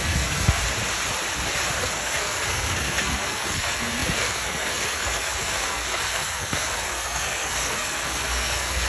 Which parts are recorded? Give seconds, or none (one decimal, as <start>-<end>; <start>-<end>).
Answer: 0.6-1.8